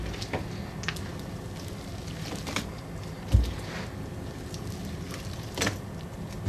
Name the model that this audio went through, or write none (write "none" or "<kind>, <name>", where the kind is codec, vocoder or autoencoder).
none